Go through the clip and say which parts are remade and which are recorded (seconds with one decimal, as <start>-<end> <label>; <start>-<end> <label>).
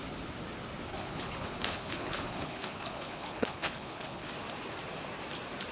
0.0-0.9 recorded; 0.9-4.3 remade; 4.3-5.7 recorded